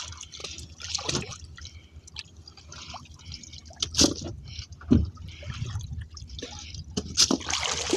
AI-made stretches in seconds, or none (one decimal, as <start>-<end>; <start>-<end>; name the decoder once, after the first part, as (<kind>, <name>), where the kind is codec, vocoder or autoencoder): none